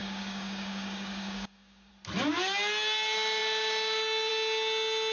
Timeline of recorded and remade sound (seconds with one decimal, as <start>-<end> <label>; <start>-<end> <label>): 0.0-1.9 remade; 1.9-5.1 recorded